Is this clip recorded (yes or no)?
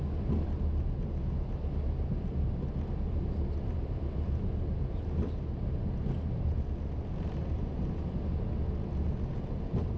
yes